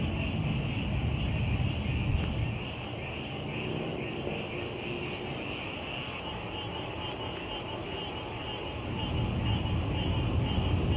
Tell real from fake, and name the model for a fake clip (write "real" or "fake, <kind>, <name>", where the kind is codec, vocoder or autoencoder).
real